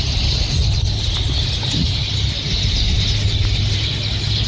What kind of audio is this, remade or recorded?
recorded